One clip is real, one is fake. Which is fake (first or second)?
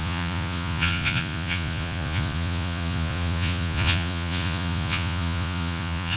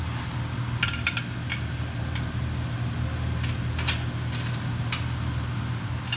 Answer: first